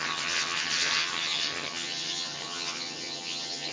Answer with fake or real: fake